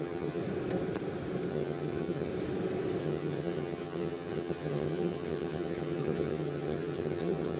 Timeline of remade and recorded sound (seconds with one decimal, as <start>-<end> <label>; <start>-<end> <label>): 0.0-0.4 remade; 0.4-1.5 recorded; 1.5-2.3 remade; 2.3-3.0 recorded; 3.0-7.6 remade